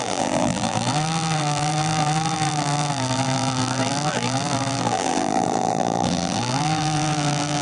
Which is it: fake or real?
fake